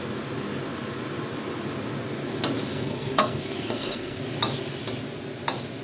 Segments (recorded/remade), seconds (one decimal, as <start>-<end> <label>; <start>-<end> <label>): 0.0-2.7 recorded; 2.7-4.2 remade; 4.2-5.8 recorded